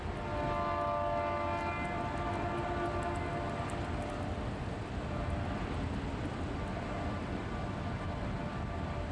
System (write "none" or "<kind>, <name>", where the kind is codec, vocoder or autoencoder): none